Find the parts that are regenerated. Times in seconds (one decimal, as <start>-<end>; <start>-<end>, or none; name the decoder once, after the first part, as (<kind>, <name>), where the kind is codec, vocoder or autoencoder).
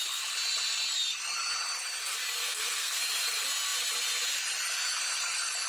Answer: 2.4-3.0 (codec, SNAC)